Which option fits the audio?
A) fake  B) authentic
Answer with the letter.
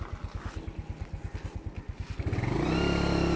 B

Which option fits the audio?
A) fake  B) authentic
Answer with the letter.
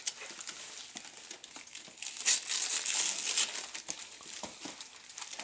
B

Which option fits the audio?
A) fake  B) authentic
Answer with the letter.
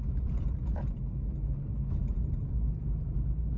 B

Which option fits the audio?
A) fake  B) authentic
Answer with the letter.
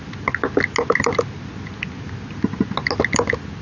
B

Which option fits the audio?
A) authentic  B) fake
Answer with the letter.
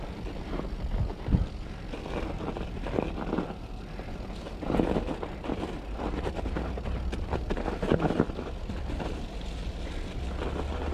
A